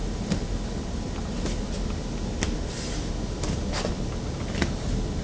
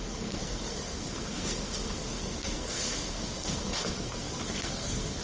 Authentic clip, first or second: first